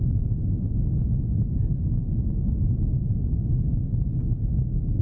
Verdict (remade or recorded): recorded